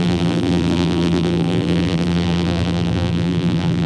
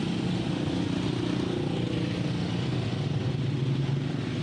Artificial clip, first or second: first